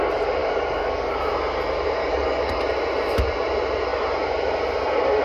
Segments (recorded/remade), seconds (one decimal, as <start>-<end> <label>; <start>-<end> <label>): 0.0-0.4 recorded; 0.4-1.2 remade; 1.2-2.0 recorded; 2.0-2.6 remade; 2.6-5.2 recorded